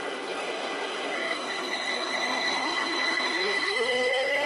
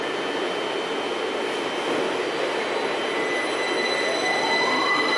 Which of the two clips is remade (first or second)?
first